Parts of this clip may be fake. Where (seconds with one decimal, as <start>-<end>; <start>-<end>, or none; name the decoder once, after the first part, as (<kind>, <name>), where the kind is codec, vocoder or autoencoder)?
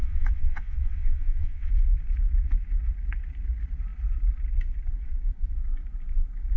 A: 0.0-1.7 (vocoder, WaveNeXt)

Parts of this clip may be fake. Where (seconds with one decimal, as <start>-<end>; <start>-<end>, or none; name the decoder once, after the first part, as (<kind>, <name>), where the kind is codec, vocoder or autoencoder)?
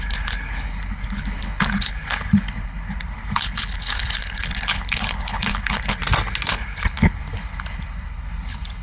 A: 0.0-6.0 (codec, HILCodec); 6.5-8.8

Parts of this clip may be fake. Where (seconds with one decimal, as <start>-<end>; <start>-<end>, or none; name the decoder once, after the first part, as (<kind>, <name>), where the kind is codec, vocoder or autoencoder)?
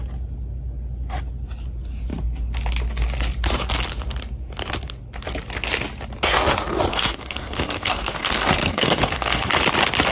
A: 6.9-9.5 (codec, SNAC)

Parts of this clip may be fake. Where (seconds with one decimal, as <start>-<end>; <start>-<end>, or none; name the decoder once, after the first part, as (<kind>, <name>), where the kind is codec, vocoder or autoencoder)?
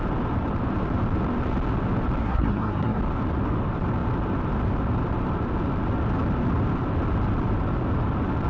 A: 2.2-3.0 (codec, SNAC)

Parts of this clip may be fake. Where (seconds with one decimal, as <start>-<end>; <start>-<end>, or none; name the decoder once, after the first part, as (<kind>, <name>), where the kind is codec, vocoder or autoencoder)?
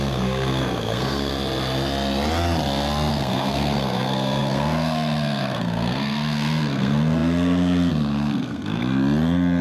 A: 0.0-1.3 (codec, SNAC); 3.1-8.8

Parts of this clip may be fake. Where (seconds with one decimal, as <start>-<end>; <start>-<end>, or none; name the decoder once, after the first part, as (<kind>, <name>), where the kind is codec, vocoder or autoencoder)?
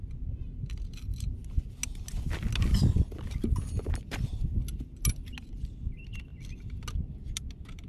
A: none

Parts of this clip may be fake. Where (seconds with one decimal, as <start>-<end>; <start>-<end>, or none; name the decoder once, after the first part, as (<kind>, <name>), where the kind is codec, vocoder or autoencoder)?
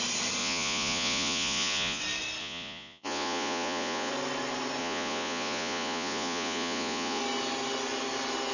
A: 0.4-2.0 (vocoder, Vocos); 2.4-4.1; 4.8-7.2